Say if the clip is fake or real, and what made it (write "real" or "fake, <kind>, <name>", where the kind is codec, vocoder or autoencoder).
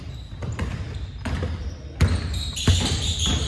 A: real